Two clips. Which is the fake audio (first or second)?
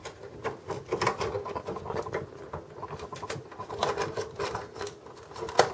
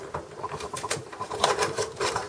second